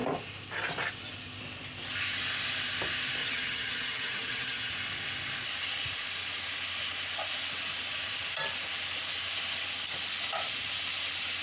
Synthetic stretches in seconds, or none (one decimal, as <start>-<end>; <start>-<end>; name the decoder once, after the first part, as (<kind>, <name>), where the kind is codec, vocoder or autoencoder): 3.2-4.7 (vocoder, HiFi-GAN)